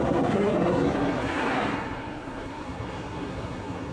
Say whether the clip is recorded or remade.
remade